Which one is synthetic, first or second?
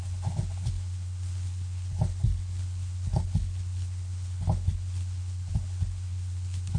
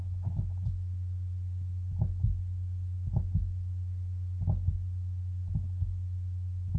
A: first